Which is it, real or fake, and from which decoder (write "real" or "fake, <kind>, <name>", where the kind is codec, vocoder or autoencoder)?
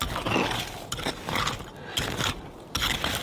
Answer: real